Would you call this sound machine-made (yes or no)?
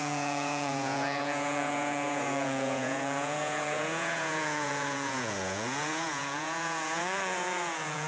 yes